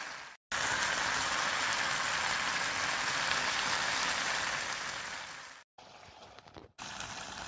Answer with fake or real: real